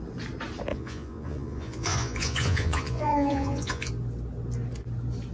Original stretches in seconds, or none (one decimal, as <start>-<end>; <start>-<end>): 0.0-0.7; 3.9-5.3